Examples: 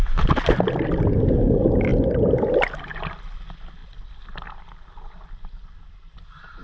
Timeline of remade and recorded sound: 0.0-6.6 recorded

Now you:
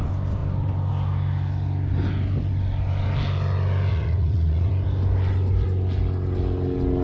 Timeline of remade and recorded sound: 0.0-3.9 recorded; 3.9-4.7 remade; 4.7-7.0 recorded

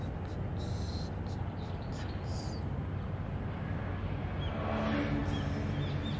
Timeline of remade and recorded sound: 0.0-6.2 recorded